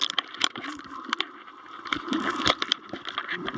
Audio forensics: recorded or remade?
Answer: recorded